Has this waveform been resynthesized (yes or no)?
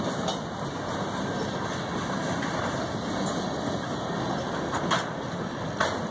no